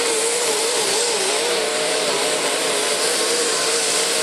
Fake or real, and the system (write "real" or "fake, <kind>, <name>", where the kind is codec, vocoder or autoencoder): fake, vocoder, BigVGAN v2